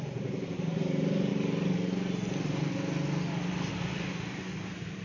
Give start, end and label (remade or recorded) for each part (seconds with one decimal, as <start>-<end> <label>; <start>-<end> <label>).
0.0-1.3 remade; 1.3-3.7 recorded; 3.7-5.0 remade